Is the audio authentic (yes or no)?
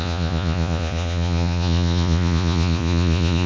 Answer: no